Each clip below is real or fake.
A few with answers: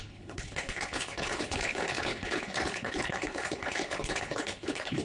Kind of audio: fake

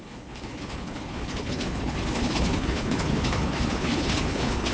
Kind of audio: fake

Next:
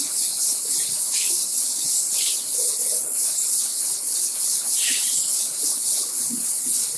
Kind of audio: fake